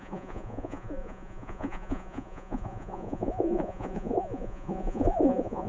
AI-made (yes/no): yes